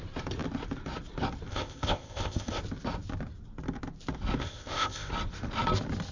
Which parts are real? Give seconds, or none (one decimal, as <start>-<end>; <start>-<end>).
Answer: 0.0-1.5; 2.6-4.4; 5.1-6.1